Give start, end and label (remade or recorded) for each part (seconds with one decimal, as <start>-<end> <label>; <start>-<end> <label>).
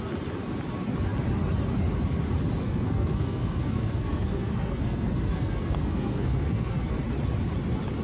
0.0-2.6 recorded; 2.6-7.0 remade; 7.0-8.0 recorded